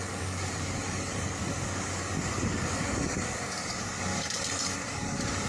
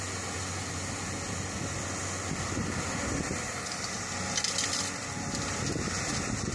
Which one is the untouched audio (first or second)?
second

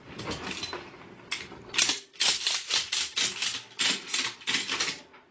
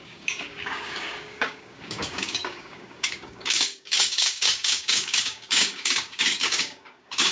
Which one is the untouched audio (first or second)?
first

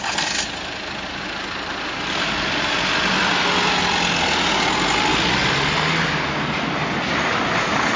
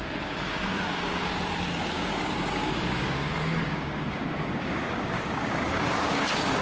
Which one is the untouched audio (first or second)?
first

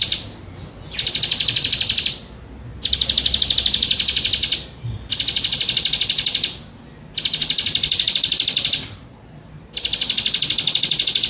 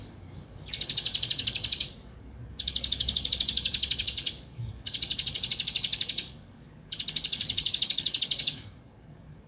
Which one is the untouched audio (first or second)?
first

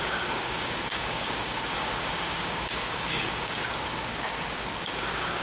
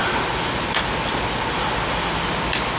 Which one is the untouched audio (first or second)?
second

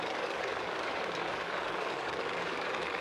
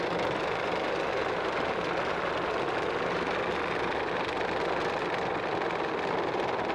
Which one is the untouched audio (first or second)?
second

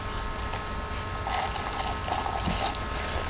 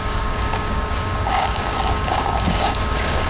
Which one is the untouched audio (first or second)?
first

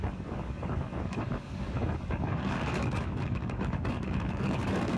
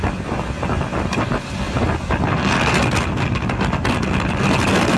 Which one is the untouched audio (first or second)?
second